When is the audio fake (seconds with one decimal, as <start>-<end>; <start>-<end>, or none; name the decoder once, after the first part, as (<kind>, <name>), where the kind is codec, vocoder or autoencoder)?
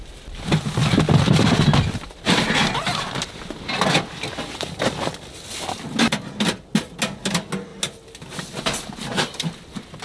none